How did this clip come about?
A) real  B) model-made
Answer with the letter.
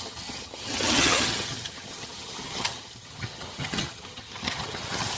B